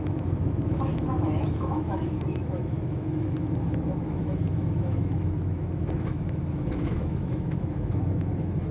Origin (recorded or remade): remade